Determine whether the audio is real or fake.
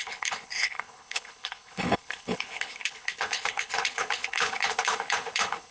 fake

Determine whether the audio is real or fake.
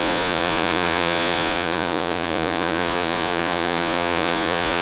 fake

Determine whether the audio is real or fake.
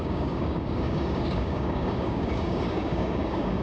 fake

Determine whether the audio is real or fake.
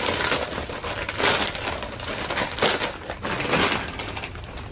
real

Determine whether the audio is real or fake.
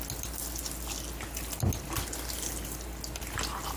real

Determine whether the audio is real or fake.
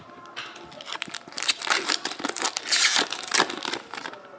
real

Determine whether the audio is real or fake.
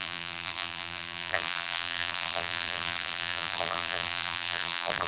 fake